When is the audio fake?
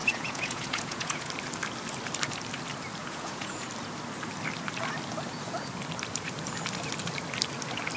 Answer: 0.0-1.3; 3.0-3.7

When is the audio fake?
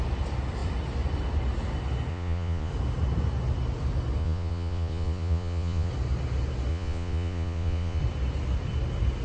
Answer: 2.1-2.7; 4.2-5.9; 6.7-8.0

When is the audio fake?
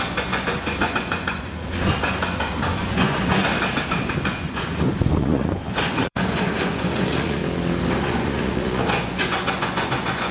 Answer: 0.0-3.5; 4.1-7.4; 8.0-10.3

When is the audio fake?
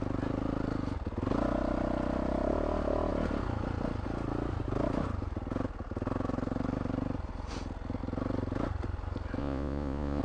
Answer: 9.4-10.2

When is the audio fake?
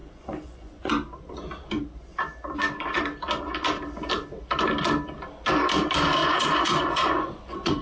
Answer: 0.0-0.9; 6.2-7.8